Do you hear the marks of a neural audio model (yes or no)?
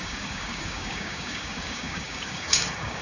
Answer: yes